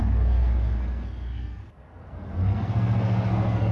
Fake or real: fake